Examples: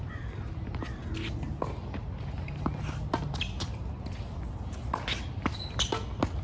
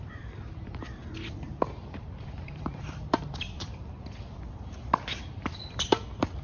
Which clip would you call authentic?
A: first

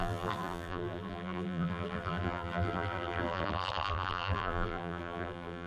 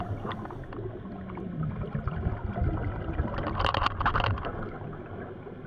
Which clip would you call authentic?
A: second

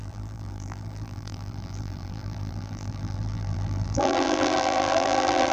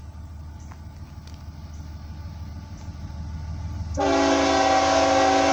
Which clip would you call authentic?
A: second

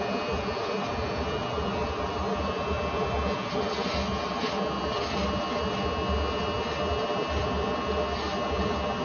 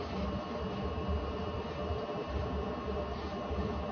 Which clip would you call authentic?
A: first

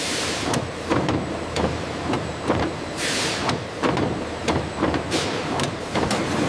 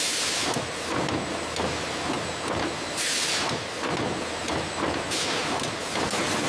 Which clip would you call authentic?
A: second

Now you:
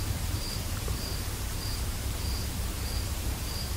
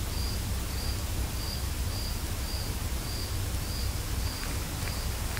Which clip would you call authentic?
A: second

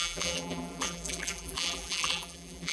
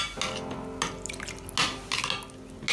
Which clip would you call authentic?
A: second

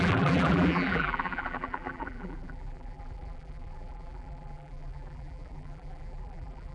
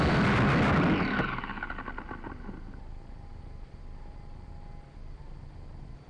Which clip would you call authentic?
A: second